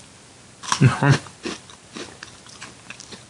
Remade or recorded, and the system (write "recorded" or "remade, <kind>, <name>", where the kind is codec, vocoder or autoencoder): recorded